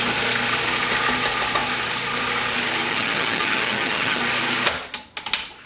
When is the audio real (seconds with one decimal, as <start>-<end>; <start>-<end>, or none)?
0.0-2.9; 4.2-5.7